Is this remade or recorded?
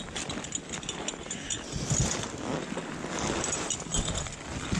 recorded